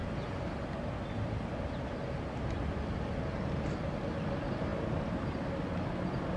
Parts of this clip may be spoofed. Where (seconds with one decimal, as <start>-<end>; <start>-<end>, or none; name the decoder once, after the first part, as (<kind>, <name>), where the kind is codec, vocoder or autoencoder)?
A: none